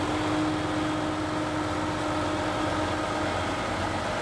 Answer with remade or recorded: recorded